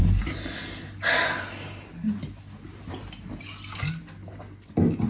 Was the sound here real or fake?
real